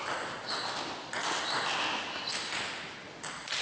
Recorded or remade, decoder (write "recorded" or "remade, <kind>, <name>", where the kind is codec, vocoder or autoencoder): recorded